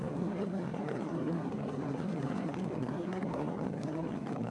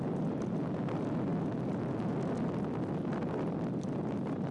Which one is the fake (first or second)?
first